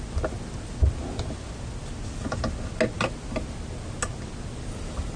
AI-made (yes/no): no